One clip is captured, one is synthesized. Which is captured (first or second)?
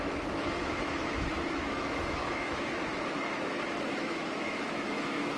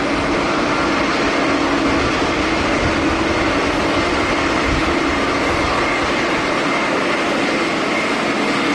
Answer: second